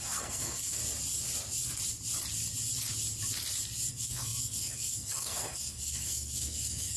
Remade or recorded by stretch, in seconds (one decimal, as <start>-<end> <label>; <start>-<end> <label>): 0.0-0.8 remade; 0.8-3.9 recorded; 3.9-7.0 remade